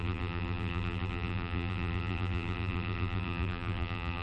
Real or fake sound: fake